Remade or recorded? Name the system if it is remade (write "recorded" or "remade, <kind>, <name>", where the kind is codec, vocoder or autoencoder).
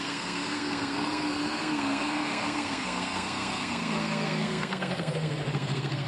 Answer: remade, codec, SNAC